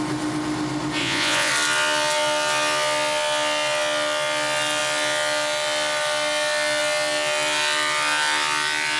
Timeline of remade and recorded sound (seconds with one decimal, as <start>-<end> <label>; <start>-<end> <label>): 0.0-1.0 recorded; 1.0-1.5 remade; 1.5-9.0 recorded